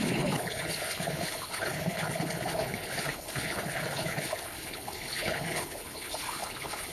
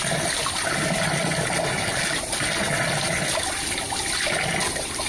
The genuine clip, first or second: second